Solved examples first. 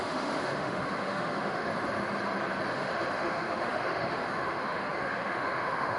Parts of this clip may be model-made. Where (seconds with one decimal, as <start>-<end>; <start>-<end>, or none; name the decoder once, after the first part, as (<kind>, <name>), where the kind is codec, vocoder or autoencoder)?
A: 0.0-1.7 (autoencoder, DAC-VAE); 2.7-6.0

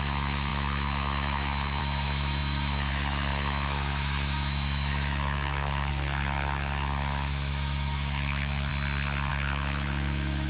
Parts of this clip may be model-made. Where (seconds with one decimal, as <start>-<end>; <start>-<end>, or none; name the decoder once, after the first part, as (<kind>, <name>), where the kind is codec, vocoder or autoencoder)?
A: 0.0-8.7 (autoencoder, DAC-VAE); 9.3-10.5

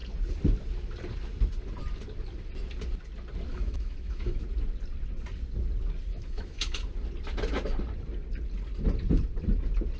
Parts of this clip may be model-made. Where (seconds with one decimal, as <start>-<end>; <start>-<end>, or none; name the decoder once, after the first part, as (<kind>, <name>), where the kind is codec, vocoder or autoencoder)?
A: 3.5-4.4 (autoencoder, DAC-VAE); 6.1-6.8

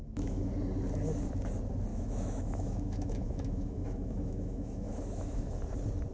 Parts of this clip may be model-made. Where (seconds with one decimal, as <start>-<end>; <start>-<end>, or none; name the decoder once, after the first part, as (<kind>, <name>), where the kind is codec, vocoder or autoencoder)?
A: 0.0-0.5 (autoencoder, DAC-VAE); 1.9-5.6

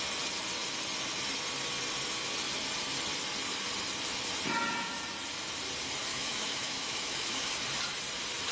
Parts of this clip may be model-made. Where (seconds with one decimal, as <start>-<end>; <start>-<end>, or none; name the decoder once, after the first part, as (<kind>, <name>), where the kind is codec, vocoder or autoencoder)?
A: 6.1-7.5 (autoencoder, DAC-VAE)

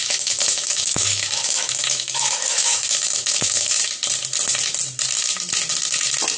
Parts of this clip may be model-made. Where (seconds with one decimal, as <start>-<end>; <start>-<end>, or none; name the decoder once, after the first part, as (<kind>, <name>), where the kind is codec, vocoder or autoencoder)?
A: 0.0-3.8 (autoencoder, DAC-VAE)

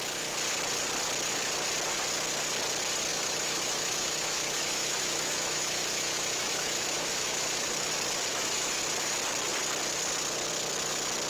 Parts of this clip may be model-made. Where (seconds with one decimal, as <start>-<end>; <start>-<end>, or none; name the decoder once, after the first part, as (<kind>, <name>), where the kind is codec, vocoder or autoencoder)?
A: 3.1-7.9 (autoencoder, DAC-VAE); 8.3-8.8